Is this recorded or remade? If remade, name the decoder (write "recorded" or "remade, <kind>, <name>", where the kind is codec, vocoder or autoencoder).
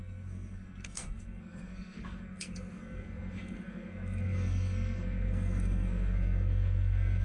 remade, codec, SNAC